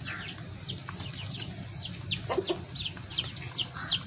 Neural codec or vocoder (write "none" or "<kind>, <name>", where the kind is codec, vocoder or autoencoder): none